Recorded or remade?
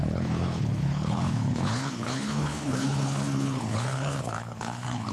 remade